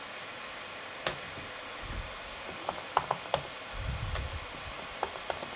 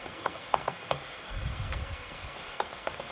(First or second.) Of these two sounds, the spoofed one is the second